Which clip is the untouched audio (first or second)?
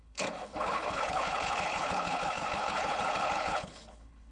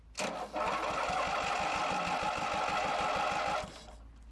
second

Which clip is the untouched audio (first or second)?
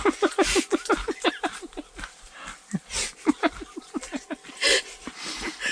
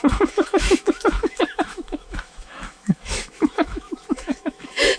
first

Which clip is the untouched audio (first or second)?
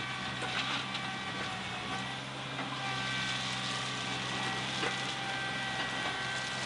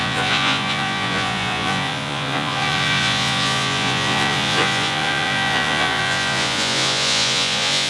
first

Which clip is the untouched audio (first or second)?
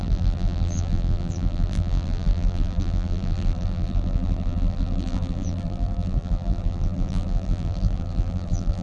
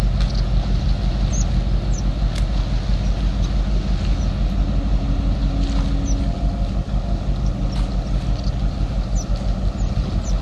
second